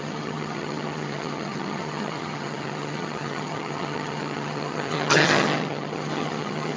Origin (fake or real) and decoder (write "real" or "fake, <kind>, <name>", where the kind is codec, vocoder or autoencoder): fake, vocoder, HiFi-GAN